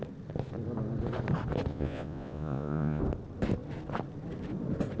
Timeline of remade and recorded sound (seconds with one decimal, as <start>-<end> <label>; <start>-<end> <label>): 0.0-1.7 recorded; 1.7-3.0 remade; 3.0-5.0 recorded